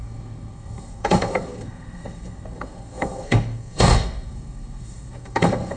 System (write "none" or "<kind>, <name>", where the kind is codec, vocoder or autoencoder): codec, SNAC